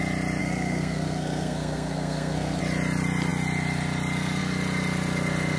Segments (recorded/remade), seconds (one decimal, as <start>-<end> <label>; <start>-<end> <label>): 0.0-0.4 recorded; 0.4-2.6 remade; 2.6-5.6 recorded